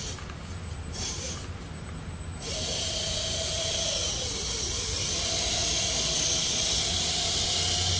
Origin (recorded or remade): recorded